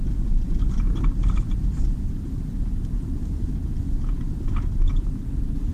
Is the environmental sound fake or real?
real